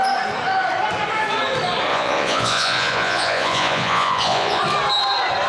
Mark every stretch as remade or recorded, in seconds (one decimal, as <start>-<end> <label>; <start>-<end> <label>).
0.0-1.9 recorded; 1.9-4.6 remade; 4.6-5.5 recorded